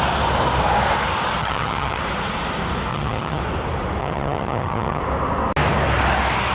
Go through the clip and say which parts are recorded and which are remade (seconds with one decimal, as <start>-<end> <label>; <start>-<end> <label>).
0.0-1.4 recorded; 1.4-2.0 remade; 2.0-2.9 recorded; 2.9-3.4 remade; 3.4-4.0 recorded; 4.0-5.0 remade; 5.0-6.5 recorded